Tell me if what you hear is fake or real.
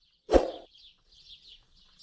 fake